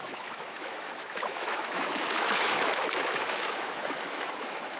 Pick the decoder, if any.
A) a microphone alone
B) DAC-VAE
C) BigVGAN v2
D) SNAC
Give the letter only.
B